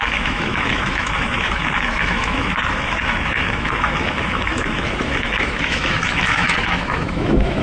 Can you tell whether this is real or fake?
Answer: fake